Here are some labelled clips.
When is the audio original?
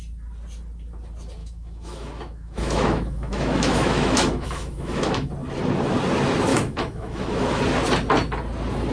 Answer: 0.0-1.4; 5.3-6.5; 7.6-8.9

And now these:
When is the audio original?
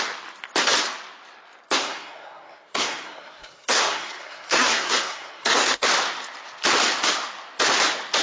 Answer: 0.0-1.8; 5.8-8.2